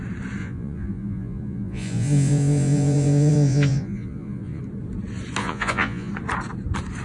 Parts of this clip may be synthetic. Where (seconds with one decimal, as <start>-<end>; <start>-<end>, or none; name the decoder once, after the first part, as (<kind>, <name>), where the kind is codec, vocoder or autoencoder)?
0.4-4.6 (vocoder, Vocos); 5.4-6.1